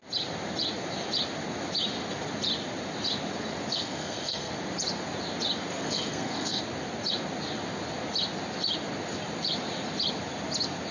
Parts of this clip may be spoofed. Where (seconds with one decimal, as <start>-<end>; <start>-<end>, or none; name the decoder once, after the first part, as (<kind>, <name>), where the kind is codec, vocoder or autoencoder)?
3.7-4.5 (codec, SNAC); 5.7-6.6